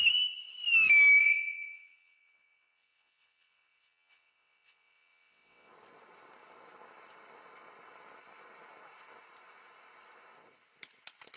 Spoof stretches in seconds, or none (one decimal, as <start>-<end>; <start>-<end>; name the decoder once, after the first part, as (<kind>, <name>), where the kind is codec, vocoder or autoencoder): 1.2-5.7 (vocoder, WaveNeXt)